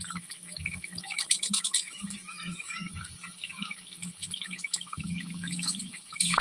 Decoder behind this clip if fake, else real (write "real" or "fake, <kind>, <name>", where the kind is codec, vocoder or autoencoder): fake, autoencoder, DAC-VAE